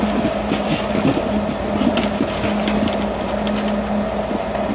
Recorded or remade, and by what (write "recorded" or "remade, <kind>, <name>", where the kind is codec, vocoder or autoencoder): recorded